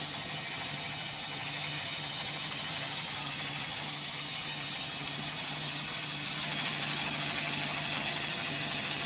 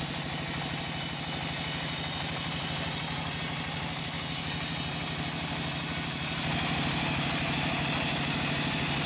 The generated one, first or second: first